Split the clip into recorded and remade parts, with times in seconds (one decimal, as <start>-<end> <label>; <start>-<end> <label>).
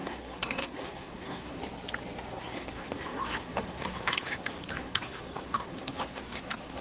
0.0-1.6 remade; 1.6-2.3 recorded; 2.3-6.8 remade